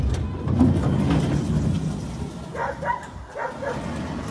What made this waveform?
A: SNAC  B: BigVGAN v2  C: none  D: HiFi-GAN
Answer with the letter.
C